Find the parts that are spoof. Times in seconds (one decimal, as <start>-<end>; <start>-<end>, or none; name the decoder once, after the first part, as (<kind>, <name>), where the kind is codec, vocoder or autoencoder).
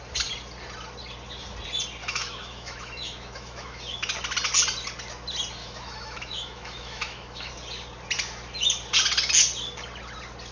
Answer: 2.0-3.8 (autoencoder, DAC-VAE); 5.6-7.5